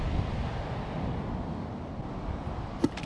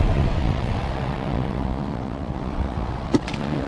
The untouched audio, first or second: first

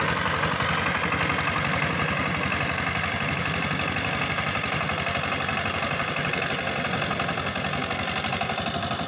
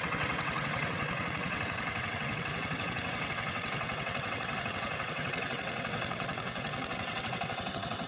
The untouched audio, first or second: first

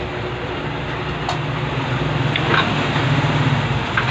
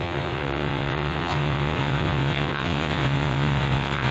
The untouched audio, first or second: first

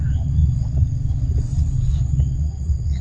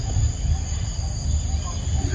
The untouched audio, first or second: second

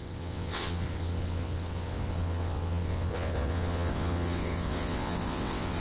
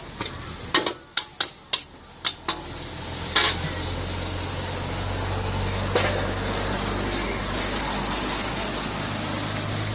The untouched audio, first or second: second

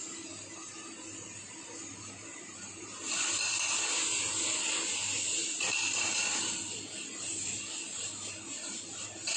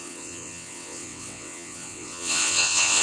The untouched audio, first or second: first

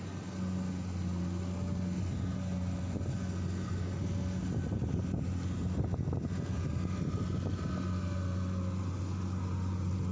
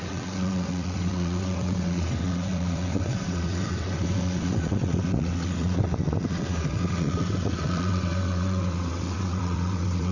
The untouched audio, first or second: first